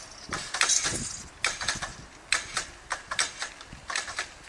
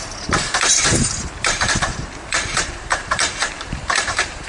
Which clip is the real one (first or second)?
first